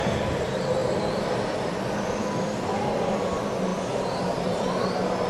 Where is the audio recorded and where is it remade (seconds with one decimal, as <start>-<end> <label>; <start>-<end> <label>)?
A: 0.0-0.8 recorded; 0.8-3.0 remade; 3.0-3.7 recorded; 3.7-4.7 remade; 4.7-5.3 recorded